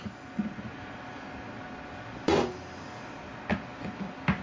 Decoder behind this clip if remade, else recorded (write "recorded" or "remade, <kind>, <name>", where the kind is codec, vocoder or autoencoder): recorded